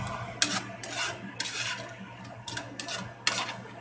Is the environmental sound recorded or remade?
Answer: recorded